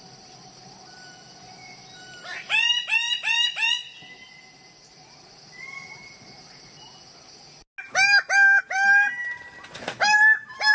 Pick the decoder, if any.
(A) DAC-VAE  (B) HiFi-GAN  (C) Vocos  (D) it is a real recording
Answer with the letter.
D